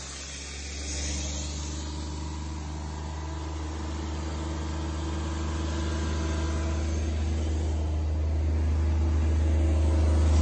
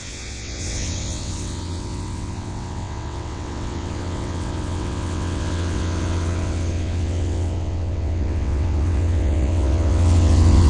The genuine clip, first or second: first